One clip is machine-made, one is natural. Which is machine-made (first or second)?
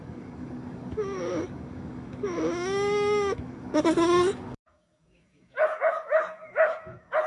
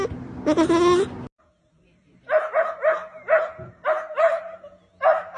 first